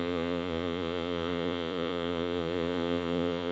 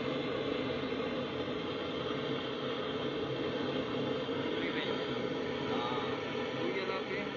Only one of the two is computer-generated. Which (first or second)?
first